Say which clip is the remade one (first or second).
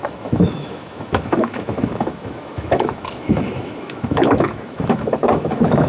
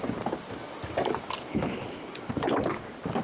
first